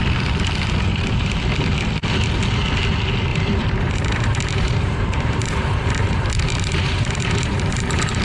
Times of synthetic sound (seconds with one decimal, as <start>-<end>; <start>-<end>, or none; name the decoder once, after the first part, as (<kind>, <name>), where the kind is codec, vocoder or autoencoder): 0.9-1.4 (vocoder, BigVGAN v2); 3.3-8.2